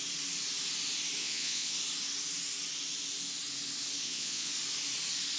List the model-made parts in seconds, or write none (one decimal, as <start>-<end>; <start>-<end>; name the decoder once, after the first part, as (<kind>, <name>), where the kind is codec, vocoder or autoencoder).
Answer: 1.2-1.7 (vocoder, Vocos); 4.0-4.5